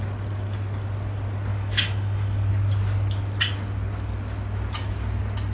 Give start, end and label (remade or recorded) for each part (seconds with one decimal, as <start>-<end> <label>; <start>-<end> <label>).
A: 0.0-1.5 recorded; 1.5-2.5 remade; 2.5-5.5 recorded